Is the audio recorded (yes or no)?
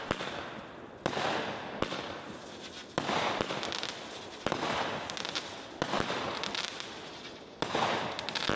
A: yes